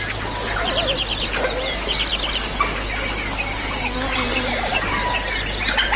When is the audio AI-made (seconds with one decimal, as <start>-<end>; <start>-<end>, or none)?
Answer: none